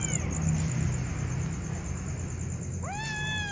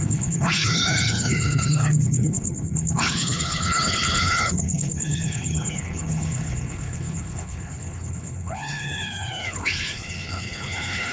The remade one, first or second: second